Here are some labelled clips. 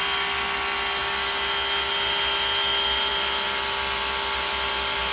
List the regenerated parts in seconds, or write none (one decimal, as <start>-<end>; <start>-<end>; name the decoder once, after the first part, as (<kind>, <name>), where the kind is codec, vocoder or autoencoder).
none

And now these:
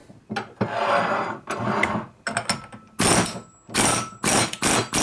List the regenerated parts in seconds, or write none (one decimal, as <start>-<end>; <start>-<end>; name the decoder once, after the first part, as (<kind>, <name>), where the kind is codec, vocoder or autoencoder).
none

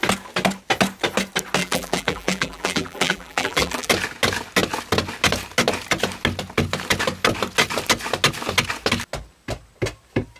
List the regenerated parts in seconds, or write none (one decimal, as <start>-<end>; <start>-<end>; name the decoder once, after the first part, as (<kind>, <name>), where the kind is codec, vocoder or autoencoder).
1.6-3.9 (vocoder, BigVGAN v2)